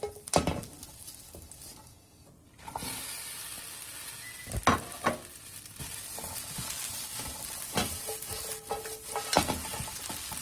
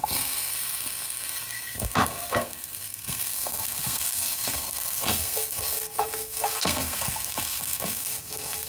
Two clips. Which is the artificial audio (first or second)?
second